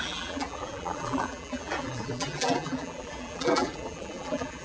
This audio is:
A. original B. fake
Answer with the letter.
B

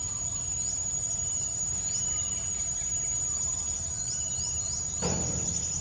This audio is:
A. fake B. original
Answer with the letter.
B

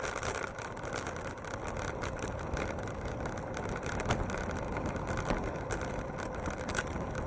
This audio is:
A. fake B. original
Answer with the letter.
B